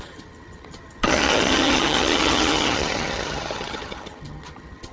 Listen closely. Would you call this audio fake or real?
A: fake